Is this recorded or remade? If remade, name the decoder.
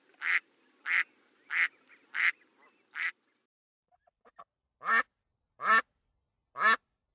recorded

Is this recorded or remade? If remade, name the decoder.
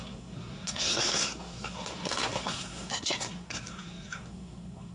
remade, codec, SNAC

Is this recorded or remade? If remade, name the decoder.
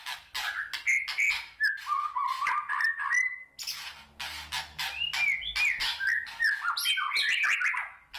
recorded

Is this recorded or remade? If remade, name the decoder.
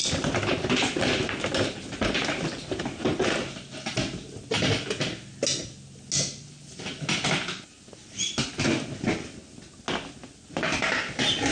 recorded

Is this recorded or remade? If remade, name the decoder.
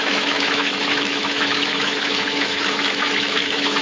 remade, autoencoder, DAC-VAE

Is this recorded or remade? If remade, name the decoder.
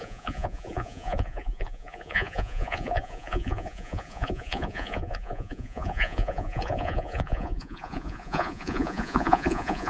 remade, vocoder, Vocos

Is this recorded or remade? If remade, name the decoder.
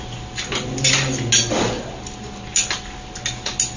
recorded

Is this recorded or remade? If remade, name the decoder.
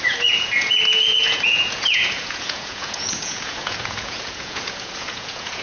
remade, vocoder, Vocos